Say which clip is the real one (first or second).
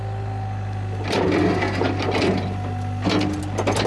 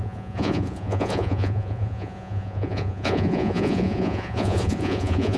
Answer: first